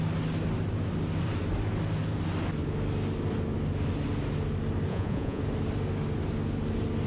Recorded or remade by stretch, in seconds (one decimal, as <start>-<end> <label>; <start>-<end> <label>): 0.0-4.9 recorded; 4.9-5.4 remade; 5.4-7.1 recorded